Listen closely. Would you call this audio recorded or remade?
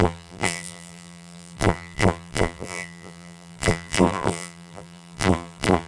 remade